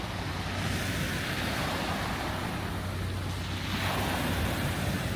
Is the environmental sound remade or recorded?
recorded